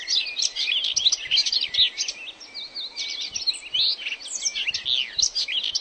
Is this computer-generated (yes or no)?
no